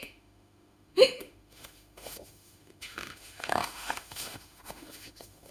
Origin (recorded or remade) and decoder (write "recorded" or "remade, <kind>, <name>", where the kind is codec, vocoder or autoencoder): remade, autoencoder, DAC-VAE